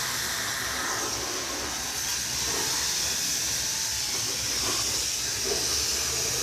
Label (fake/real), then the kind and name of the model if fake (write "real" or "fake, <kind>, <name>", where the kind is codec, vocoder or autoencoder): real